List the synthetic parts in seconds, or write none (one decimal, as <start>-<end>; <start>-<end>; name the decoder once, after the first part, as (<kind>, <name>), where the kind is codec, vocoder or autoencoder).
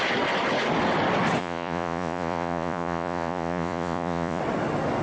1.4-4.4 (vocoder, Vocos)